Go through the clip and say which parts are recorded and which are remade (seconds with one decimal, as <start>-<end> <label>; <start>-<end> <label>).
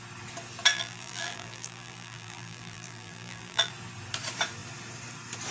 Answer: 0.0-0.7 recorded; 0.7-3.7 remade; 3.7-5.5 recorded